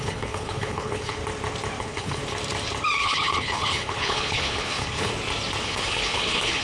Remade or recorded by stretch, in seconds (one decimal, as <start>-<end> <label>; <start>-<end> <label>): 0.0-1.2 remade; 1.2-1.8 recorded; 1.8-2.2 remade; 2.2-3.0 recorded; 3.0-5.1 remade; 5.1-5.6 recorded; 5.6-6.6 remade